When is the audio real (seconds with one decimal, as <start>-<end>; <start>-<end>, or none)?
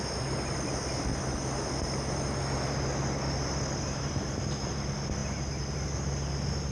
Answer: 0.0-6.7